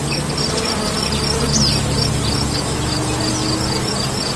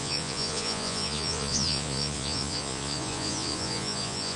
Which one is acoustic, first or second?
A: first